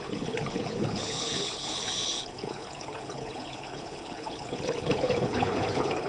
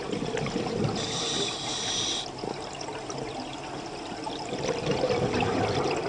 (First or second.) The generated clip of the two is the first